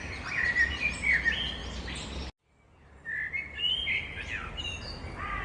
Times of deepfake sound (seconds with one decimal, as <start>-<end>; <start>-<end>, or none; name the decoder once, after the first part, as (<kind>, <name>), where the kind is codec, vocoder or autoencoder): none